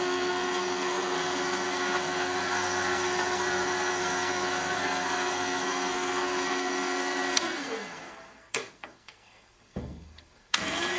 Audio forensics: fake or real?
fake